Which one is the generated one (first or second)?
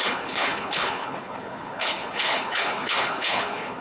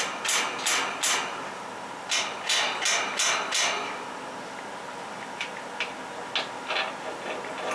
first